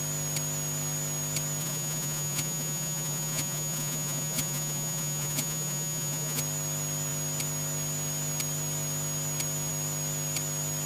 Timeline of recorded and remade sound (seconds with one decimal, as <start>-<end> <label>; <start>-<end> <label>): 0.0-1.6 recorded; 1.6-6.4 remade; 6.4-10.9 recorded